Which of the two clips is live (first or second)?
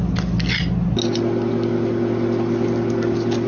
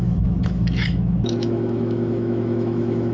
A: first